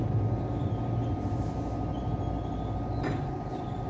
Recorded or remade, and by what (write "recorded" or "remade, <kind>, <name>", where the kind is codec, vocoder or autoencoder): recorded